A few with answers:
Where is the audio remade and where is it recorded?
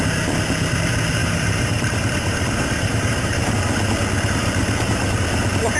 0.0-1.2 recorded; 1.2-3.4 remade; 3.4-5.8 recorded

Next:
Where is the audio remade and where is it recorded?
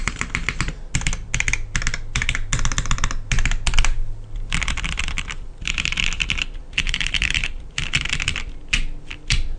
0.0-6.6 recorded; 6.6-8.1 remade; 8.1-9.6 recorded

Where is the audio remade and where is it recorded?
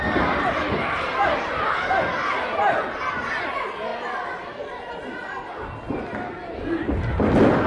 0.0-0.6 recorded; 0.6-1.9 remade; 1.9-7.7 recorded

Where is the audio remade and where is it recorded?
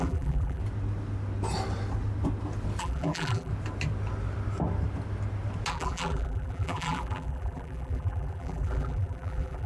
0.0-0.6 remade; 0.6-2.8 recorded; 2.8-3.5 remade; 3.5-5.7 recorded; 5.7-9.7 remade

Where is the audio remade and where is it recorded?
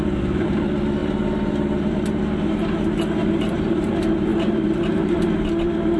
0.0-1.0 recorded; 1.0-2.2 remade; 2.2-3.2 recorded; 3.2-3.9 remade; 3.9-4.3 recorded; 4.3-5.0 remade; 5.0-6.0 recorded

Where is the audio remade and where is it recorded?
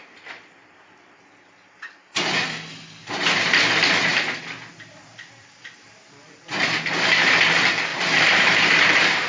0.0-4.1 recorded; 4.1-6.4 remade; 6.4-7.9 recorded; 7.9-8.8 remade; 8.8-9.3 recorded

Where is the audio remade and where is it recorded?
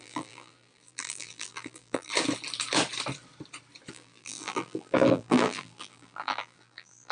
0.0-2.1 remade; 2.1-3.9 recorded; 3.9-7.1 remade